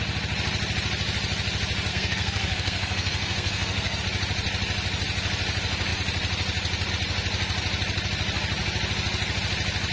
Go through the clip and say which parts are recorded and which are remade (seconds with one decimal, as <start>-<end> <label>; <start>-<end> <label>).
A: 0.0-1.9 recorded; 1.9-4.0 remade; 4.0-9.9 recorded